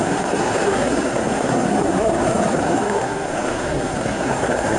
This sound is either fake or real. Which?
fake